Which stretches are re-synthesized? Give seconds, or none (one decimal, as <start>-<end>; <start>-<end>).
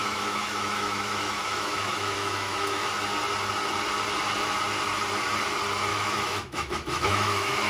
0.0-2.9; 5.9-7.7